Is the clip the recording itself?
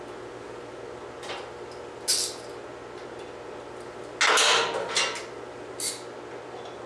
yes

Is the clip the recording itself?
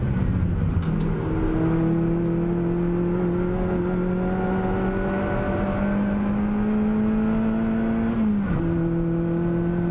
yes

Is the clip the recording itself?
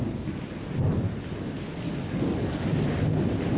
yes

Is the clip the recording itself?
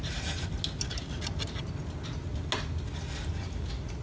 yes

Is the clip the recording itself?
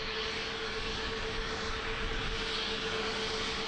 no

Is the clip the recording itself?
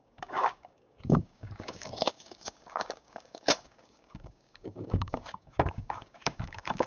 no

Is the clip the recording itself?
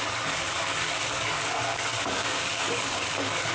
no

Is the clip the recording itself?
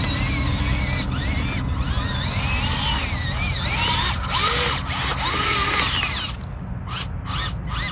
yes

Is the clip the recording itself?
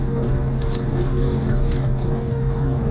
no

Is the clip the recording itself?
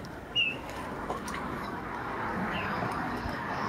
no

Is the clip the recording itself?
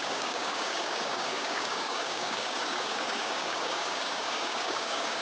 no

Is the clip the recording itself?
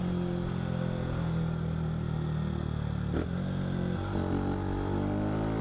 yes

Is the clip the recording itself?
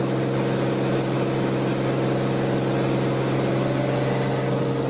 yes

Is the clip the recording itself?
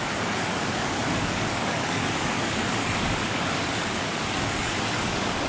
no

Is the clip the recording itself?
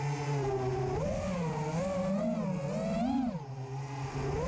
yes